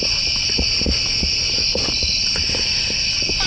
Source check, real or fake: real